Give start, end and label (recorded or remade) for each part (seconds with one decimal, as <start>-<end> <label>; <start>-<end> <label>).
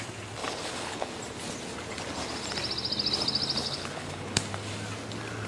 0.0-0.4 recorded; 0.4-1.1 remade; 1.1-3.6 recorded; 3.6-4.4 remade; 4.4-5.5 recorded